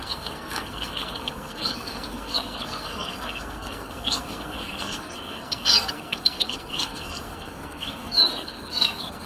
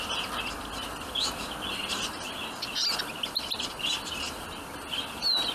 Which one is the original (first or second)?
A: second